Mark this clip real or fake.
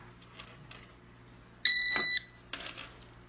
real